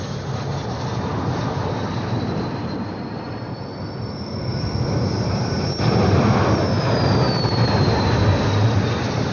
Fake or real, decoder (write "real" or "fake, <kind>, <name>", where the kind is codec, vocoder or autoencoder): real